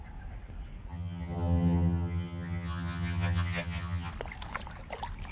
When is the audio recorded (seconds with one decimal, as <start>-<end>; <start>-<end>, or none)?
0.0-0.9; 4.1-5.3